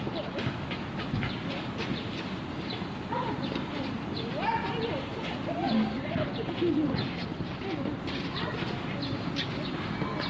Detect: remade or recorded recorded